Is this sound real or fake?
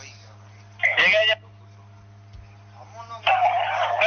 real